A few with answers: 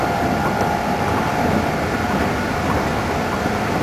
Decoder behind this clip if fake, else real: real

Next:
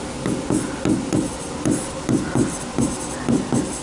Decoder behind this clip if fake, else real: real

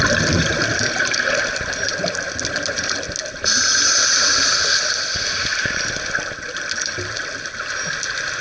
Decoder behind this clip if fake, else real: real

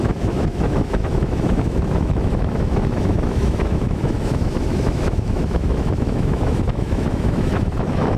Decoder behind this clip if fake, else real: fake, autoencoder, DAC-VAE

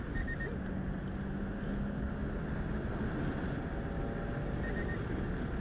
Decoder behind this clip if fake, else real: real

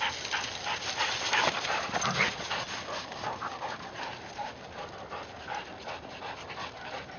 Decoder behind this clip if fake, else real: real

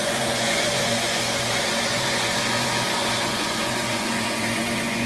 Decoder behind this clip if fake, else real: fake, vocoder, Vocos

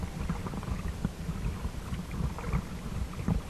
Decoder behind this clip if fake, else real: real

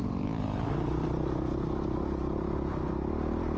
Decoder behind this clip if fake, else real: real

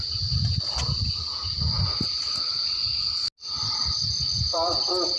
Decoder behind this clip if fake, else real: real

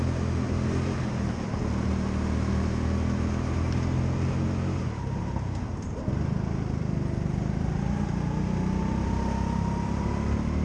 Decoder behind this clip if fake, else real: real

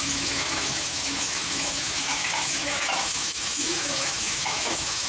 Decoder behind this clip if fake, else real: fake, autoencoder, DAC-VAE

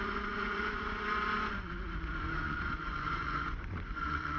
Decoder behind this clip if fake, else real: fake, vocoder, Vocos